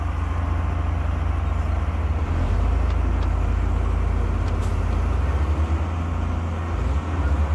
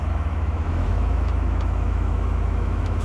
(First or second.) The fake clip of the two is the second